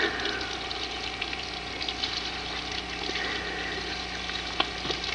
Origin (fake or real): real